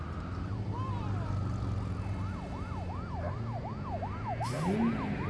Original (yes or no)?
yes